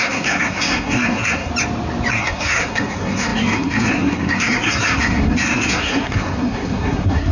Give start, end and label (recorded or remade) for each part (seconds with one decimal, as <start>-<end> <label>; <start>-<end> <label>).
0.0-1.5 remade; 1.5-2.1 recorded; 2.1-7.3 remade